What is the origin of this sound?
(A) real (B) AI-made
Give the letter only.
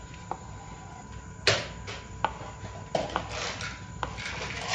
A